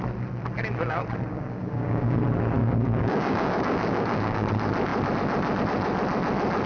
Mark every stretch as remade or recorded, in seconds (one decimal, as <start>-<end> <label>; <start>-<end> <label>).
0.0-1.3 recorded; 1.3-2.2 remade; 2.2-2.6 recorded; 2.6-4.5 remade; 4.5-6.7 recorded